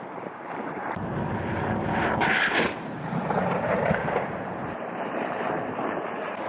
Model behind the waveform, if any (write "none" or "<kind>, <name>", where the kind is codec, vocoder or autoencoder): vocoder, BigVGAN v2